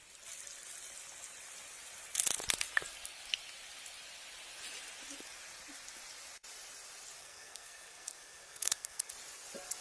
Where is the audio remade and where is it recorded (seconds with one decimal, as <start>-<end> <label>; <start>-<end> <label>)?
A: 0.0-7.2 recorded; 7.2-9.1 remade; 9.1-9.8 recorded